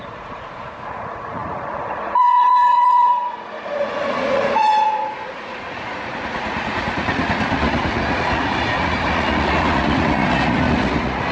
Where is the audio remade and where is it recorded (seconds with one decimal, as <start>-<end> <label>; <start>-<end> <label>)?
0.0-11.3 remade